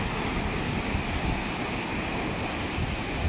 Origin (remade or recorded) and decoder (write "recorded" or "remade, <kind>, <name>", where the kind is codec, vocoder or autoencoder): recorded